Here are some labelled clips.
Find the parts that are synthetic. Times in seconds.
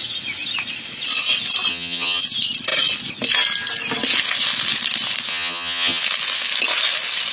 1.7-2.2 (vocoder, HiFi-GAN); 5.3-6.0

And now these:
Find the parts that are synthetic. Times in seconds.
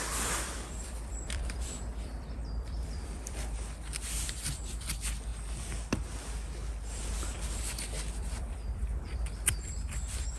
0.0-5.3 (vocoder, BigVGAN v2); 8.1-10.4